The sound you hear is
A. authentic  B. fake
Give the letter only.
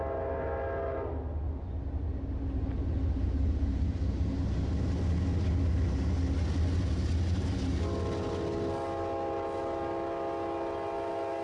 A